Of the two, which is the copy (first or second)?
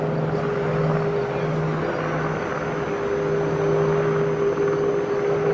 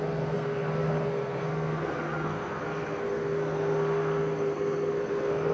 second